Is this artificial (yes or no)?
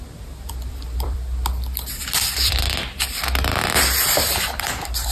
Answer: yes